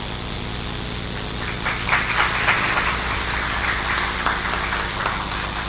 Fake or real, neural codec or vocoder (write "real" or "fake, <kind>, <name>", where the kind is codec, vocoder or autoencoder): real